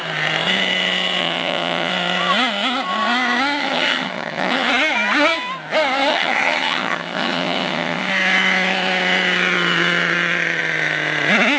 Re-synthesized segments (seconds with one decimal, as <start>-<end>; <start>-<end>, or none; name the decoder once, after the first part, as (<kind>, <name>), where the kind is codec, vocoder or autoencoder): 1.2-1.9 (vocoder, HiFi-GAN); 3.6-4.7; 6.1-8.1